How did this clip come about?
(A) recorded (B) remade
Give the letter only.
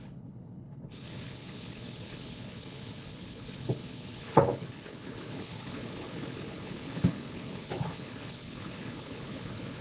B